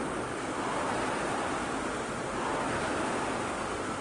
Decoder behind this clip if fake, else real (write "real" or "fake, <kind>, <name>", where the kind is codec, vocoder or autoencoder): real